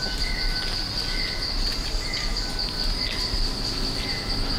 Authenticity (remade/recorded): recorded